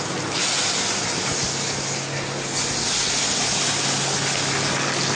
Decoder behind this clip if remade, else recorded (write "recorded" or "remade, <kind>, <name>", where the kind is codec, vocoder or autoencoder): recorded